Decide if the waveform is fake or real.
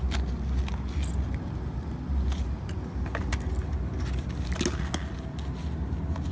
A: real